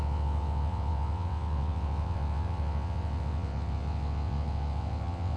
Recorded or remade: remade